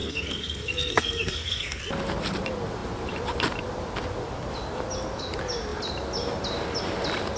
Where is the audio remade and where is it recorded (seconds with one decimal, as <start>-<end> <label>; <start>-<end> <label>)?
0.0-1.8 remade; 1.8-7.4 recorded